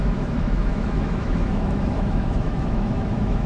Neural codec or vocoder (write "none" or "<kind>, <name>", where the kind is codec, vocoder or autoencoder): autoencoder, DAC-VAE